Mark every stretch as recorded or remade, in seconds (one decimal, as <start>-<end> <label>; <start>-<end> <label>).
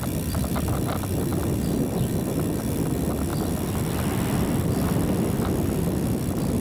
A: 0.0-6.6 recorded